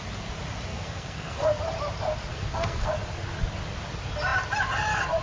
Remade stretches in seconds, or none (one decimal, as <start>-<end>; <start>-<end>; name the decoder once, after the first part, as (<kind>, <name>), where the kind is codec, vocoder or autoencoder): 0.7-1.6 (codec, SNAC); 2.3-2.9